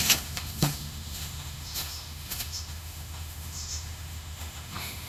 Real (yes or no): no